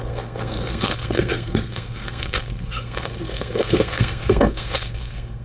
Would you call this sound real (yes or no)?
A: no